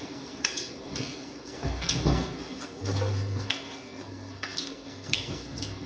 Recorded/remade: remade